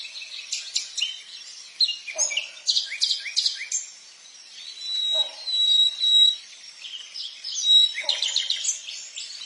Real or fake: real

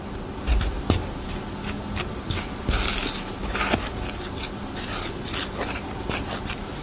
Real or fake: real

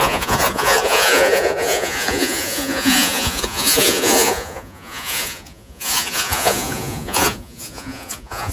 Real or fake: fake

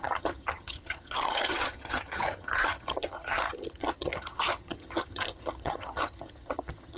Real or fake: fake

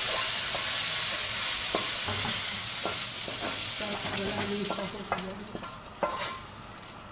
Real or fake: real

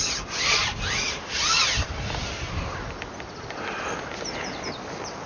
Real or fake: real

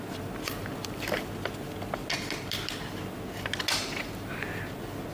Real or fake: real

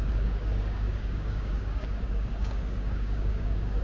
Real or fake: fake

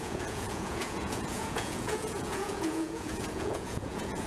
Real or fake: fake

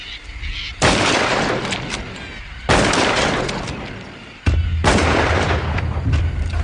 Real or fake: real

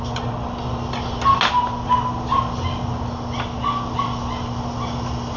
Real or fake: real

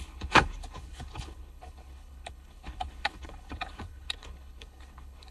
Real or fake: fake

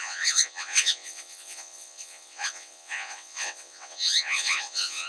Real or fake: fake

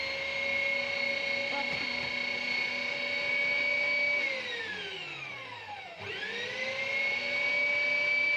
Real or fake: real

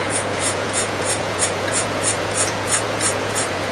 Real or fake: fake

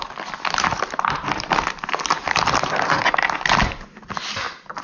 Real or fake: real